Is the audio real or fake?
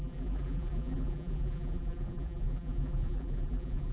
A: fake